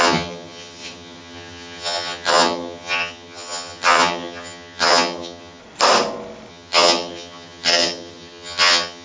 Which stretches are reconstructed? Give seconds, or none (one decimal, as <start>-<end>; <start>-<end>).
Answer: 0.0-5.6; 6.5-9.0